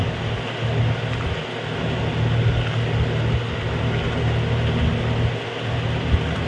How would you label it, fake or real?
real